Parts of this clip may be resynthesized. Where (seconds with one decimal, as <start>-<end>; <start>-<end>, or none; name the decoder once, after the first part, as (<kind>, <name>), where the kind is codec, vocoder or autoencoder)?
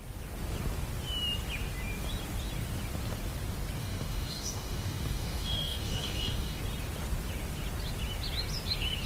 3.8-6.6 (codec, DAC)